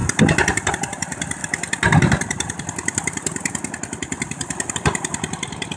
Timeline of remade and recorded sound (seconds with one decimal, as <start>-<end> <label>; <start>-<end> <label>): 0.0-5.8 recorded